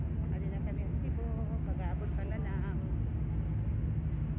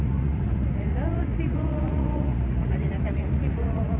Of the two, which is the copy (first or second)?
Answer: second